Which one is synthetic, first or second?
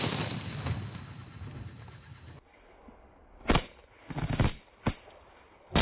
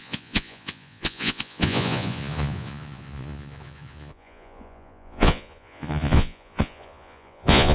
second